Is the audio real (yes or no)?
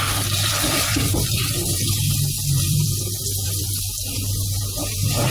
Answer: no